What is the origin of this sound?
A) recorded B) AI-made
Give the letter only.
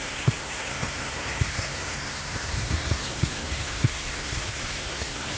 B